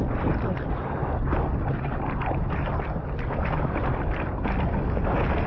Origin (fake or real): real